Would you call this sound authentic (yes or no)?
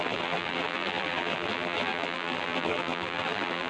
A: no